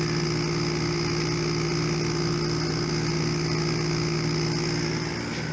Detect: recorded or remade recorded